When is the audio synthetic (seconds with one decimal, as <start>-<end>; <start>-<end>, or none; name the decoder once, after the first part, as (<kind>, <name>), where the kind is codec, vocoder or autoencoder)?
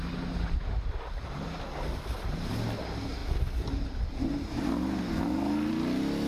none